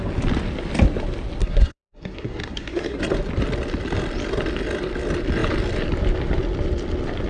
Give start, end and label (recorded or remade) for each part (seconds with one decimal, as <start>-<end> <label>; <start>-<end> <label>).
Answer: 0.0-1.4 recorded; 1.4-3.0 remade; 3.0-7.3 recorded